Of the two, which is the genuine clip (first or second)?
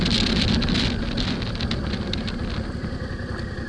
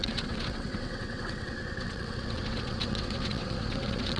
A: first